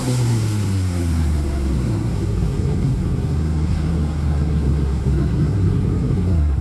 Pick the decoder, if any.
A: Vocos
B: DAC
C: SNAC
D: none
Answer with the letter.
C